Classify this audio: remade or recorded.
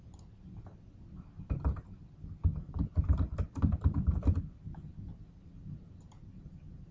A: recorded